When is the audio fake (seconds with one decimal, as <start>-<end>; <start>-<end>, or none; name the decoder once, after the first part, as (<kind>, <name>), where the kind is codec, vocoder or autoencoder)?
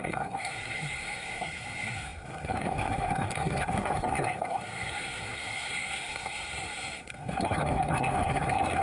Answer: 0.0-8.8 (codec, SNAC)